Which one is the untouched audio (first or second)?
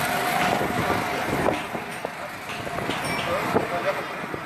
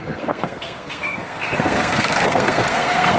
first